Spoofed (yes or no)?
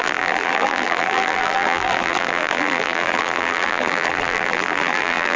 yes